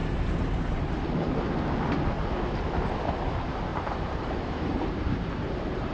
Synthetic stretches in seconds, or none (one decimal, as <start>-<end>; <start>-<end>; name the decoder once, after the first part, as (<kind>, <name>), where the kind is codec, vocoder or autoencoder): 3.7-5.9 (vocoder, BigVGAN v2)

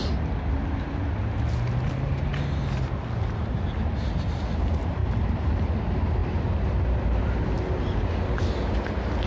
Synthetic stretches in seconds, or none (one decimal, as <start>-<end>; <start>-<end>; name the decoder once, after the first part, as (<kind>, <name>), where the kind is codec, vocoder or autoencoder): 5.0-5.5 (vocoder, BigVGAN v2)

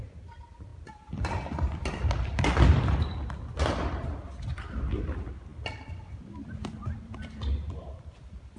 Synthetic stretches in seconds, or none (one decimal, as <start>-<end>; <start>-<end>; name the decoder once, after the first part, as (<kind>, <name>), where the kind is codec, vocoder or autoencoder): 0.0-0.7 (vocoder, BigVGAN v2); 4.7-8.6

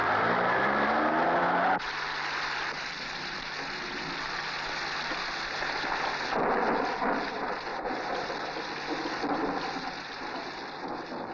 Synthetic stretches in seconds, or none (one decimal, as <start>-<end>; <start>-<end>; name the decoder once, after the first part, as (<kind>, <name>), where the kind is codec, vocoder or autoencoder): 7.7-8.3 (vocoder, BigVGAN v2)

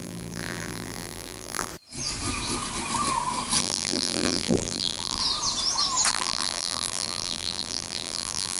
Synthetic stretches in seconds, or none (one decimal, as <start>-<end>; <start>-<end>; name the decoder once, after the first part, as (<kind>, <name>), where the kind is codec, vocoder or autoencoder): 0.0-1.7 (vocoder, BigVGAN v2); 3.6-5.2; 6.1-8.6

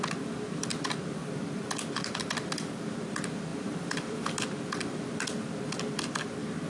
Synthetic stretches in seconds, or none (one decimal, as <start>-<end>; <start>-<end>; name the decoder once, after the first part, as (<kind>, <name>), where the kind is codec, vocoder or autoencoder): 1.2-2.2 (vocoder, BigVGAN v2); 3.5-4.3

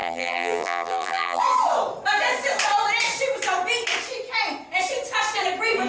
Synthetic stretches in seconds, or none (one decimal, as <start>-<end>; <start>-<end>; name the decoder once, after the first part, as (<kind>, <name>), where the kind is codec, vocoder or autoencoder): 0.0-1.4 (vocoder, BigVGAN v2)

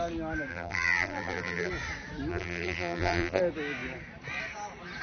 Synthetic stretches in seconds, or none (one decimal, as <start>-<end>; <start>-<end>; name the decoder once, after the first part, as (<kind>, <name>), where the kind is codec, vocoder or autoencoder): 0.5-1.7 (vocoder, BigVGAN v2); 2.3-3.4